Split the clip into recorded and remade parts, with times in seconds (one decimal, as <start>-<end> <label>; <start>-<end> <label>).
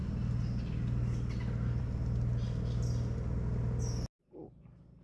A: 0.0-5.0 recorded